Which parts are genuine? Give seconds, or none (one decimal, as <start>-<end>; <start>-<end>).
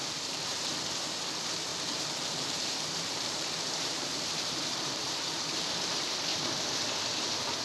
0.0-1.7; 5.7-6.3; 6.8-7.6